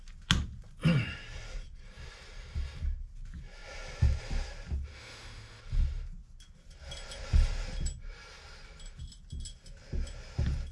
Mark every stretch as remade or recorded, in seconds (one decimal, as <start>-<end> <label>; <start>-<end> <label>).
0.0-4.9 recorded; 4.9-5.6 remade; 5.6-10.7 recorded